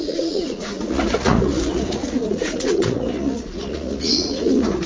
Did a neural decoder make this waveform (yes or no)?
yes